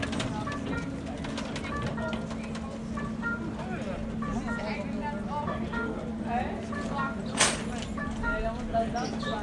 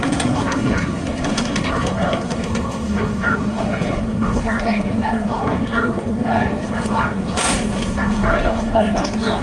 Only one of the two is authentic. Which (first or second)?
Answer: first